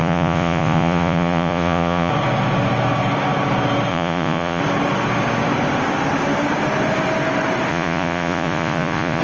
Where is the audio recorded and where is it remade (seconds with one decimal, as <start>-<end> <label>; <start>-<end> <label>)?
0.0-2.1 remade; 2.1-3.9 recorded; 3.9-4.6 remade; 4.6-7.7 recorded; 7.7-9.2 remade